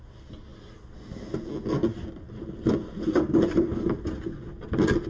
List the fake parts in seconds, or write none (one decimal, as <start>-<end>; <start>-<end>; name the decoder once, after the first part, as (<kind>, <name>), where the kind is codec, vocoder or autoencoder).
none